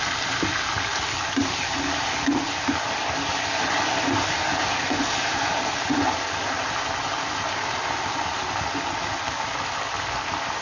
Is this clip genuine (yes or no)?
yes